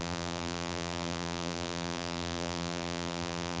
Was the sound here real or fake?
fake